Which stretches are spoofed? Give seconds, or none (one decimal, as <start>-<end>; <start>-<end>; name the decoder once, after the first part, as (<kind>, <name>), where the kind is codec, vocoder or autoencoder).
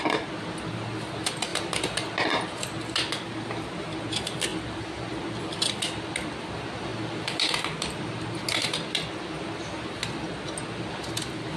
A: none